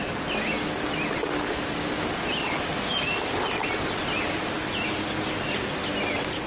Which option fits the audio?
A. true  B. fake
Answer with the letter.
A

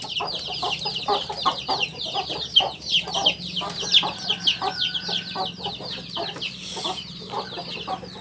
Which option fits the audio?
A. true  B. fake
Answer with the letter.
A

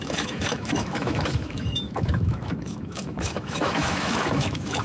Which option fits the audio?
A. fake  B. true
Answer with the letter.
A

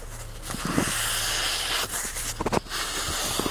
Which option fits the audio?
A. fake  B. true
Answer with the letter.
B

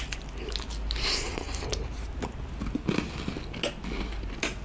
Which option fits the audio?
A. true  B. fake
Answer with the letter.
A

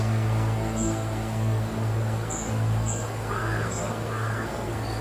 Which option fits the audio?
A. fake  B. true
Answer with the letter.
A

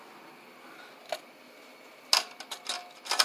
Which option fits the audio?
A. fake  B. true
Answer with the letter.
B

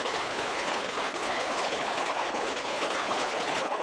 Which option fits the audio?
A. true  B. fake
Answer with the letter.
B